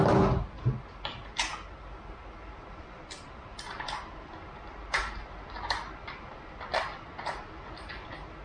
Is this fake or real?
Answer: real